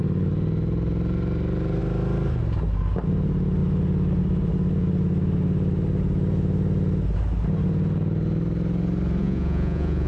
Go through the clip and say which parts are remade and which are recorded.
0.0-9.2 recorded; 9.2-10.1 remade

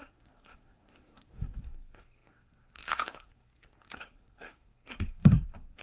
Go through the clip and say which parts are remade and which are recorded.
0.0-5.8 remade

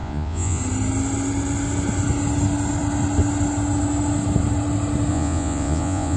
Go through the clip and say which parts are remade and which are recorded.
0.0-0.6 remade; 0.6-5.1 recorded; 5.1-6.2 remade

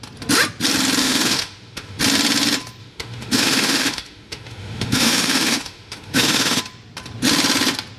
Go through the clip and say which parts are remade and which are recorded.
0.0-1.0 recorded; 1.0-2.0 remade; 2.0-2.8 recorded; 2.8-6.6 remade; 6.6-8.0 recorded